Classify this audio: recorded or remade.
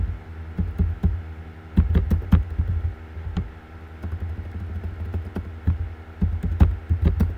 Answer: recorded